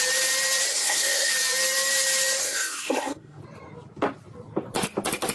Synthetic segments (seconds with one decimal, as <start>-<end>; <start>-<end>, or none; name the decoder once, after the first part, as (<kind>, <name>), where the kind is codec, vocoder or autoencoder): 0.7-1.3 (codec, SNAC); 2.4-3.4